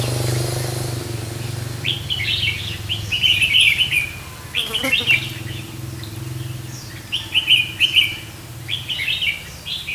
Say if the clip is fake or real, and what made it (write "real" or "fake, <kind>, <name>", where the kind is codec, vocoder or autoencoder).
real